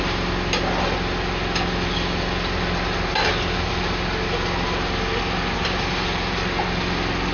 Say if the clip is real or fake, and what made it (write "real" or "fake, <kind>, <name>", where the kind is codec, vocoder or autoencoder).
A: real